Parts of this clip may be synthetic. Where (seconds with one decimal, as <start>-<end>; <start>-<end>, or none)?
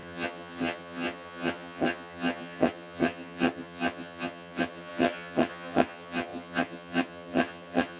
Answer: 0.0-8.0